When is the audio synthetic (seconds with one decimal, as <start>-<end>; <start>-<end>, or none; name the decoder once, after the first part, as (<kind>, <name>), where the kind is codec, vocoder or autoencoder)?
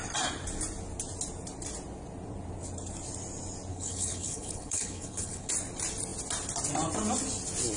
3.7-5.5 (codec, HILCodec)